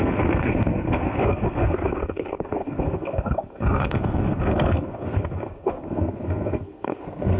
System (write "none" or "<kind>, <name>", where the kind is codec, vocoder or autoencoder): codec, SNAC